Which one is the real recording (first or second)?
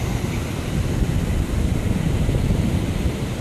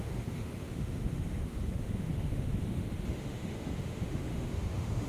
first